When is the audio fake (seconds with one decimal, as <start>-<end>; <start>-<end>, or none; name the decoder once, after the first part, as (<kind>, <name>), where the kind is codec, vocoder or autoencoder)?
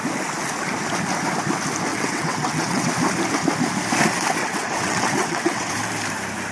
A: 1.9-2.9 (vocoder, WaveNeXt); 4.4-5.7